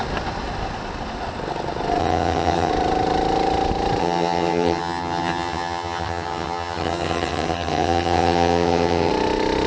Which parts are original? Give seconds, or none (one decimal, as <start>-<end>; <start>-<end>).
0.0-2.0; 2.7-4.0; 9.1-9.7